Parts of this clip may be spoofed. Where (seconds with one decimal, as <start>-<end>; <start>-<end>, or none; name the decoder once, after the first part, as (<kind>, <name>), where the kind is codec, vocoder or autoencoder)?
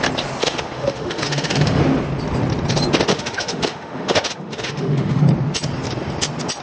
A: 0.4-1.8 (autoencoder, DAC-VAE); 3.1-5.2